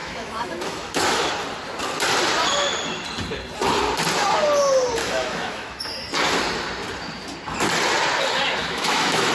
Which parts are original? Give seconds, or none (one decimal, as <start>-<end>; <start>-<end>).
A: 1.3-5.0; 5.8-8.6